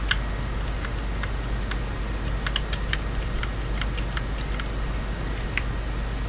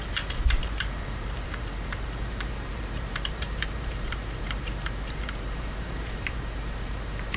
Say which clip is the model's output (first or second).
second